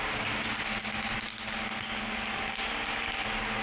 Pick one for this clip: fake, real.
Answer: real